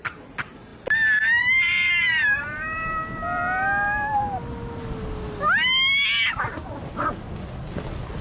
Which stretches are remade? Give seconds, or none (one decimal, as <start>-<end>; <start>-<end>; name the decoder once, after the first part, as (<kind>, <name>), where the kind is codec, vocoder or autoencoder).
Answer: 0.7-2.9 (vocoder, BigVGAN v2)